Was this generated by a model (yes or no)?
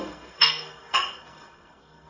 yes